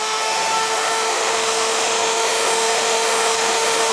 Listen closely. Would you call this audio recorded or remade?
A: remade